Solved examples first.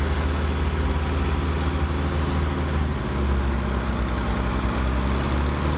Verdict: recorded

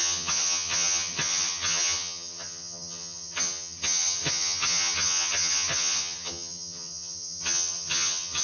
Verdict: remade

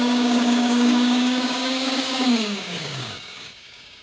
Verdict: remade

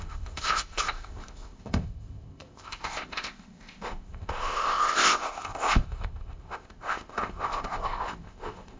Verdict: remade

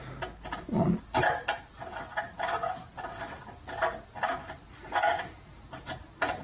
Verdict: recorded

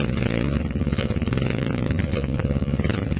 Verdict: remade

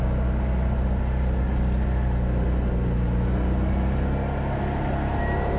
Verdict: recorded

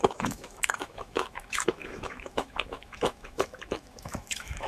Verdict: remade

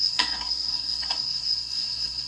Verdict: remade